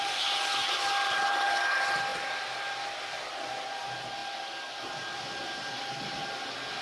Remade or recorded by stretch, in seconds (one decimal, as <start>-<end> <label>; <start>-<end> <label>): 0.0-6.8 recorded